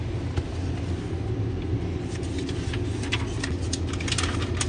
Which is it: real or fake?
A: real